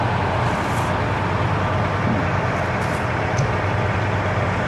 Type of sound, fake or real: real